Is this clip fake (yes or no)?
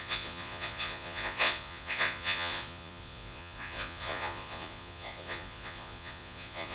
yes